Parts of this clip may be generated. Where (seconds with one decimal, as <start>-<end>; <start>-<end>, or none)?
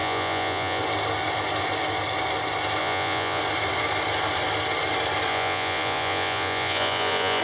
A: 0.0-0.8; 2.8-3.4; 5.3-7.4